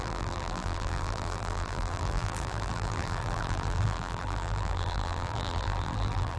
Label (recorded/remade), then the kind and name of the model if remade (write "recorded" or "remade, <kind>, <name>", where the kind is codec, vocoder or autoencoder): remade, vocoder, BigVGAN v2